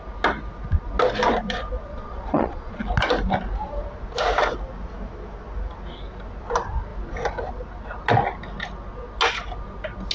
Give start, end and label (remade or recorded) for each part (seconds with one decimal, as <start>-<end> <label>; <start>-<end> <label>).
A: 0.0-1.9 recorded; 1.9-2.7 remade; 2.7-10.1 recorded